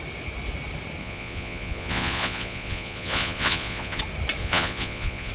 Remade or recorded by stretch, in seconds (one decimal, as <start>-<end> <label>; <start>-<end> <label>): 0.0-1.0 recorded; 1.0-4.0 remade; 4.0-4.4 recorded; 4.4-5.3 remade